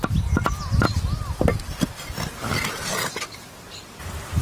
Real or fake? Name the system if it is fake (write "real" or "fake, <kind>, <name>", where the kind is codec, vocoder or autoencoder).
real